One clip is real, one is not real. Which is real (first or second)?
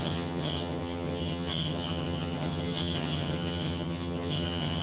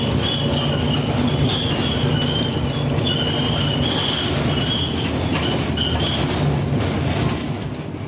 second